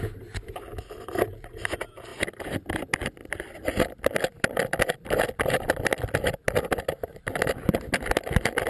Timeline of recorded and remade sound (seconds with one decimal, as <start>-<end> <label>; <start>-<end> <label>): 0.0-8.7 recorded